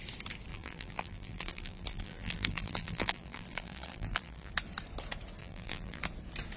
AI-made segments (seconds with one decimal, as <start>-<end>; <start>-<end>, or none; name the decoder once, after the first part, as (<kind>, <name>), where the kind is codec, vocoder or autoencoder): 0.5-4.5 (vocoder, BigVGAN v2); 5.4-6.0